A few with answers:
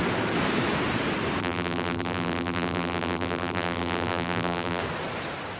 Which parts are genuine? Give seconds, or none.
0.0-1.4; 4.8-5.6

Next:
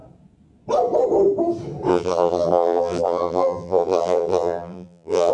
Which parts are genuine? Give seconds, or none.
0.0-1.9

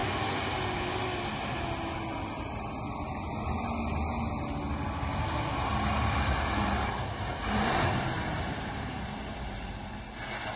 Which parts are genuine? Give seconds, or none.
0.0-5.9; 9.7-10.6

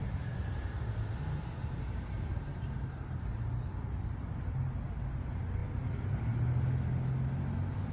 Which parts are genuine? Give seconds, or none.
0.0-0.4; 4.3-7.9

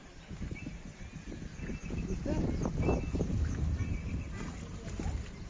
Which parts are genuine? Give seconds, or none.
1.1-4.4

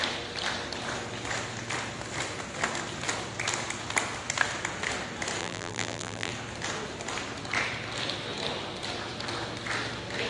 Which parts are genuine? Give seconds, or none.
0.0-5.4; 6.3-10.3

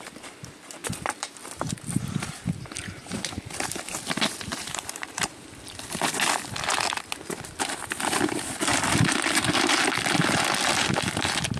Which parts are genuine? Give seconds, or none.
0.0-0.8; 1.4-2.8; 3.8-4.5; 5.3-11.6